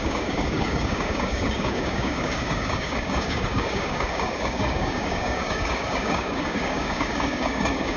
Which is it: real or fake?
fake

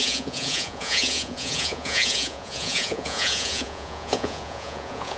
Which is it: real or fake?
fake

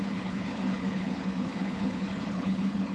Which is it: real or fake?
fake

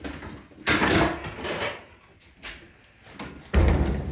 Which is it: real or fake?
real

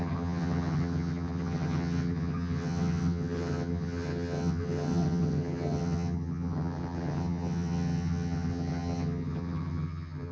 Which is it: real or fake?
fake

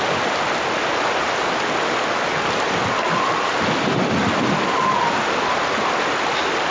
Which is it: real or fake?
real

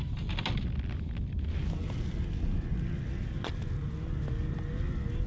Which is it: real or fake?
real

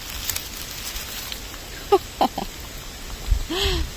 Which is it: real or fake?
real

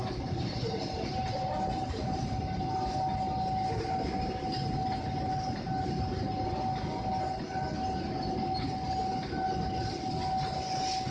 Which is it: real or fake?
real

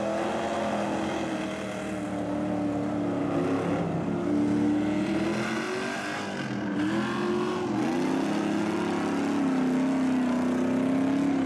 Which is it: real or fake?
real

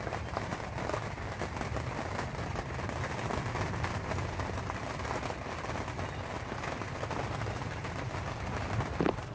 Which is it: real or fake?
real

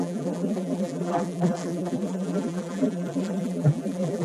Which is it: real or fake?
fake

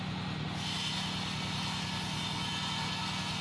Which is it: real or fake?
real